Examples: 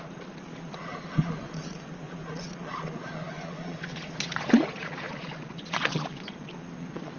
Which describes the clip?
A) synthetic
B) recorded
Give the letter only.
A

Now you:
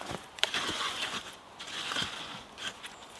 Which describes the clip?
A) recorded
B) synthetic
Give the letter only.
B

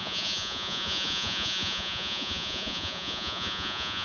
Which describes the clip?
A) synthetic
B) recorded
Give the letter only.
A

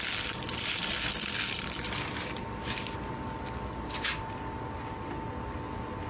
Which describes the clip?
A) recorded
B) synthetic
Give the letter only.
A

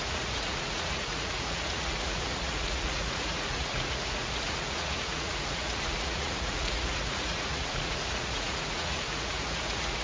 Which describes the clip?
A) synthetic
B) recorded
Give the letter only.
A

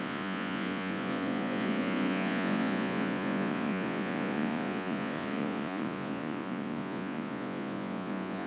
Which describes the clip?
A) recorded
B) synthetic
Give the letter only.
B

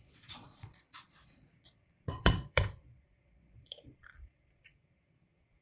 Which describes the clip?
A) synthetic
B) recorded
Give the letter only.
A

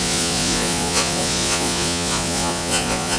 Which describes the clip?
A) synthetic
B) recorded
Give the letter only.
A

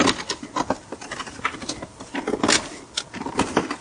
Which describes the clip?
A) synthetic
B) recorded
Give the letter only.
B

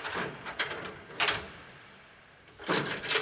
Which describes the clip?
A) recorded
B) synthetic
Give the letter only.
A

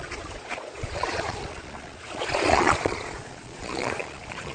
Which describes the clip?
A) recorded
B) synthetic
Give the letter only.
B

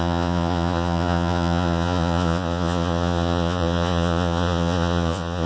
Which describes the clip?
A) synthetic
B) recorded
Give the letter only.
A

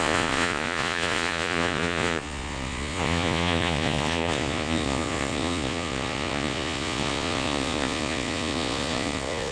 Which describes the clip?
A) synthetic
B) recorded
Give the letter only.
A